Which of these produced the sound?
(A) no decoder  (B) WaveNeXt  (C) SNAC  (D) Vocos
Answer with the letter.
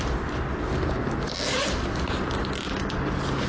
A